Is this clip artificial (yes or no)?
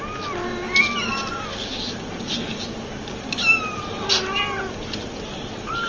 no